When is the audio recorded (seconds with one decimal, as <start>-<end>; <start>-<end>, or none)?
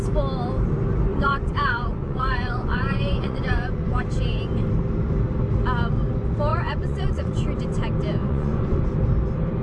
0.0-1.1; 4.0-6.5; 7.5-8.2; 8.8-9.6